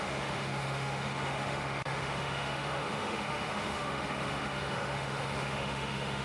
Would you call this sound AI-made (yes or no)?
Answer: yes